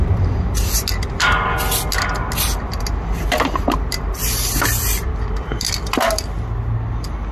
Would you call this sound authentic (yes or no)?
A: yes